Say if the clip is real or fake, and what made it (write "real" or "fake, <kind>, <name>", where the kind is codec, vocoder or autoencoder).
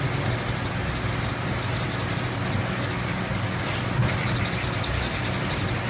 real